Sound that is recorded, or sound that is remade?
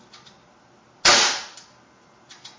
recorded